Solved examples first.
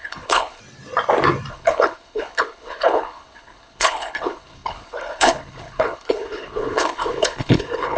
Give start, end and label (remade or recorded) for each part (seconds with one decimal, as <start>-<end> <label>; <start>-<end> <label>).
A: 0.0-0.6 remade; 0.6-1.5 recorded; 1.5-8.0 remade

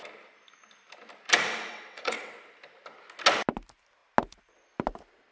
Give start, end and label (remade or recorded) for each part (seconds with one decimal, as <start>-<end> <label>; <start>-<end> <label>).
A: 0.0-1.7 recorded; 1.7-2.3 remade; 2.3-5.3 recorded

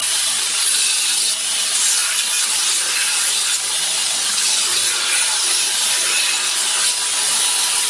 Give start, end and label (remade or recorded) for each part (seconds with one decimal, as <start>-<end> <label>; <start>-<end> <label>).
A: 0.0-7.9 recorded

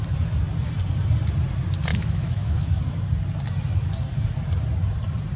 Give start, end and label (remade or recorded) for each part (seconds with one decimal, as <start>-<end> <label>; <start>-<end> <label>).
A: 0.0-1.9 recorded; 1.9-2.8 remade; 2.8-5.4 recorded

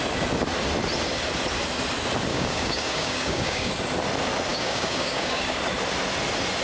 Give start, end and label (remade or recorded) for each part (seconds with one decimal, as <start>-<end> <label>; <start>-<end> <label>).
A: 0.0-2.3 recorded; 2.3-3.7 remade; 3.7-4.5 recorded; 4.5-5.6 remade; 5.6-6.6 recorded

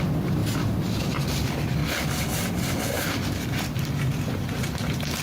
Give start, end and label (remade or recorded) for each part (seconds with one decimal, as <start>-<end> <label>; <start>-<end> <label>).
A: 0.0-0.4 remade; 0.4-1.0 recorded; 1.0-1.8 remade; 1.8-4.3 recorded; 4.3-5.2 remade

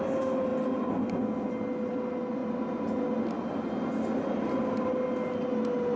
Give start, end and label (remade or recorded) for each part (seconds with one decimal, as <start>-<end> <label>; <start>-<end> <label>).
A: 0.0-6.0 recorded